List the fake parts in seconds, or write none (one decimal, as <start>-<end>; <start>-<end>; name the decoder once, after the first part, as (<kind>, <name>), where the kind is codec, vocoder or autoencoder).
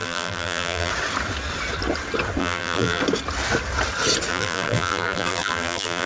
0.0-0.9 (vocoder, BigVGAN v2); 2.4-3.0; 4.3-6.1